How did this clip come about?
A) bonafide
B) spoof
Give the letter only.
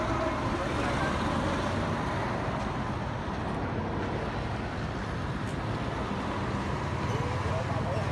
A